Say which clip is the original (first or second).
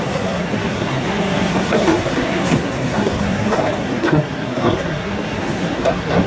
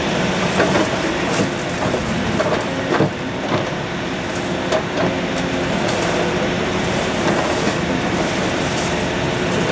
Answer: second